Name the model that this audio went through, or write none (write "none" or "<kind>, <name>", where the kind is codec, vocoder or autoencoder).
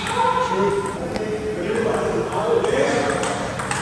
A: none